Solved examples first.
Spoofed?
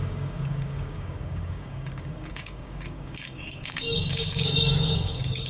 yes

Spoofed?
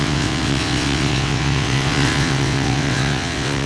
yes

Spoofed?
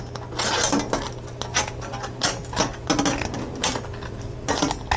no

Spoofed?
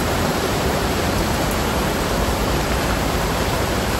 yes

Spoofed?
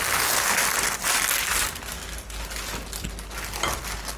no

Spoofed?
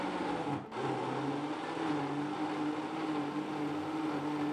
no